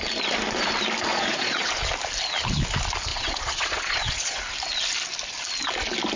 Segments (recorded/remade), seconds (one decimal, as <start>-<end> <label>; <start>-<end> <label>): 0.0-1.1 recorded; 1.1-1.7 remade; 1.7-3.1 recorded; 3.1-4.4 remade; 4.4-6.2 recorded